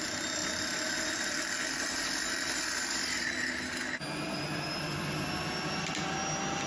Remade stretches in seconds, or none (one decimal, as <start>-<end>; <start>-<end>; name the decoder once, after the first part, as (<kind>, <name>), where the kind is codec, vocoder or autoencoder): none